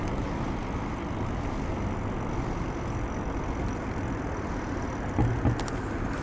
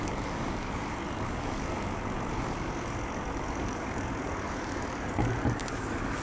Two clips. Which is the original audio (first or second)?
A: first